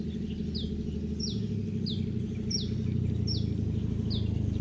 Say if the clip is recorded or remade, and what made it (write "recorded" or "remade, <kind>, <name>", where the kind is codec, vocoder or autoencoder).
recorded